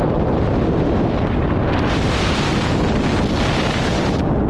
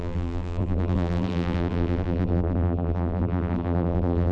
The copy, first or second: second